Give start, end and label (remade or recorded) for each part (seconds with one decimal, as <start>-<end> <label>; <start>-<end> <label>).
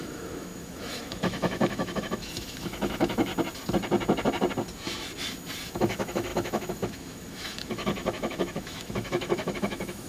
0.0-3.3 remade; 3.3-5.7 recorded; 5.7-10.1 remade